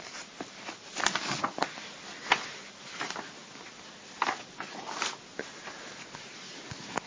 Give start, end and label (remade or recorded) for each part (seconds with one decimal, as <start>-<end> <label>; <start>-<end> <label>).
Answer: 0.0-7.1 recorded